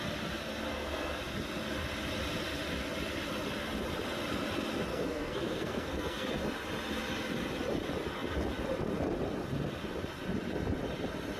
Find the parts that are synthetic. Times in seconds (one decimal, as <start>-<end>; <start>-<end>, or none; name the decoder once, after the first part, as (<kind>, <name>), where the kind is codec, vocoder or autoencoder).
0.7-1.2 (codec, SNAC); 4.9-6.3